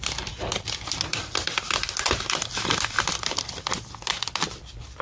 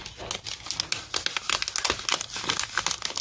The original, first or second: second